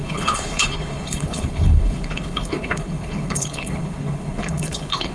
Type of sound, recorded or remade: remade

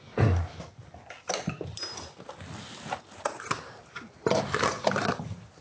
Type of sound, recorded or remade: recorded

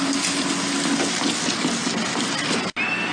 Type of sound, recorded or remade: recorded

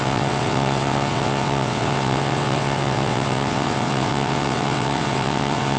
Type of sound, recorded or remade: remade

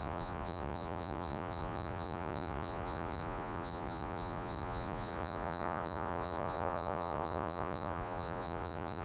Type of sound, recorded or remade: remade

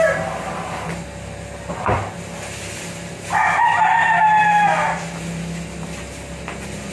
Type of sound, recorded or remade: recorded